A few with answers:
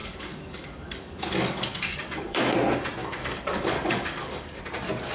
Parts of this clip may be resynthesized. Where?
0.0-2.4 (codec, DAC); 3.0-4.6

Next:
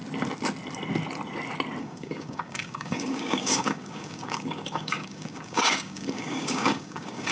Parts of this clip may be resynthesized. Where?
1.8-7.3 (codec, DAC)

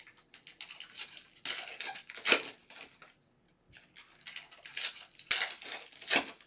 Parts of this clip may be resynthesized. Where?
none

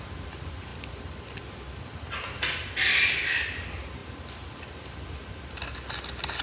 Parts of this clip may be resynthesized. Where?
none

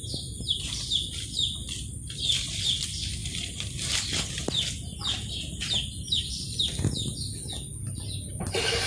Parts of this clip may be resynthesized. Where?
none

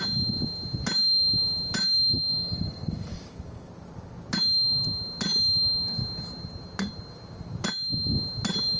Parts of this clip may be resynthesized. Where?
2.3-3.7 (codec, DAC)